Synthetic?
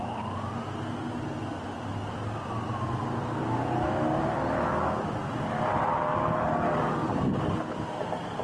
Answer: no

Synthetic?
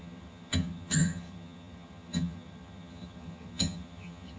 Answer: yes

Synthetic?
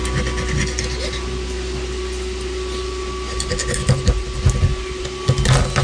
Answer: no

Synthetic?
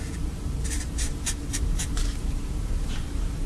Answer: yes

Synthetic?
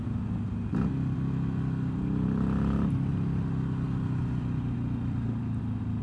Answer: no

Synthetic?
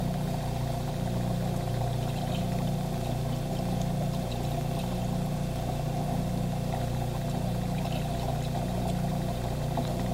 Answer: no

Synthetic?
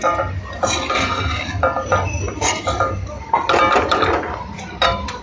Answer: no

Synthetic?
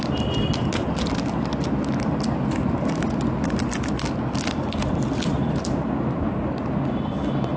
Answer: no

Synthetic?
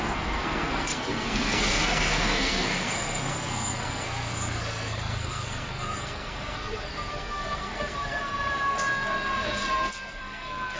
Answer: yes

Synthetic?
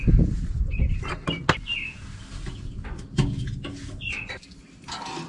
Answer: no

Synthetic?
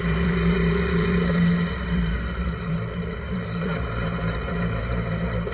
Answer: yes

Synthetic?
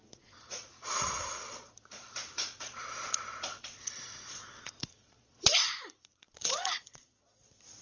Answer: yes